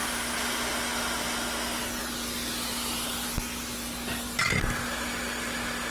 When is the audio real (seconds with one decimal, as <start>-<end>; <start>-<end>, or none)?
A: 0.0-5.9